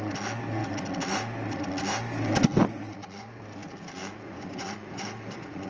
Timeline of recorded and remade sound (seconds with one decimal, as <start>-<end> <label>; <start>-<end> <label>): 0.0-2.7 recorded; 2.7-3.4 remade; 3.4-4.0 recorded; 4.0-5.7 remade